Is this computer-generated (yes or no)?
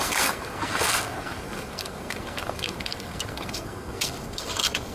yes